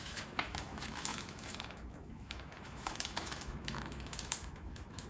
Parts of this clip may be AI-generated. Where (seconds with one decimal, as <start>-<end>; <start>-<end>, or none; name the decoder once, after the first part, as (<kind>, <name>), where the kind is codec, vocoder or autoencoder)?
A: 0.0-5.1 (autoencoder, DAC-VAE)